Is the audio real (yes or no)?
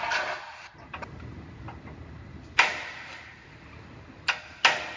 yes